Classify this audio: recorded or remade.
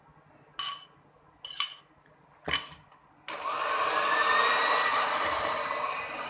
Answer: recorded